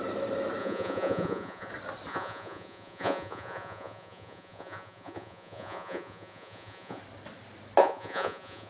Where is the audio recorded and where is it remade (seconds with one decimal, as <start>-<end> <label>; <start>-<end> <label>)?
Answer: 0.0-0.6 recorded; 0.6-1.7 remade; 1.7-2.1 recorded; 2.1-7.0 remade; 7.0-7.8 recorded; 7.8-8.7 remade